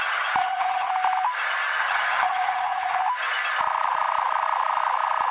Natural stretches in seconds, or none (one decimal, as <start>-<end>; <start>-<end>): 0.0-0.4; 0.9-1.8; 3.0-5.3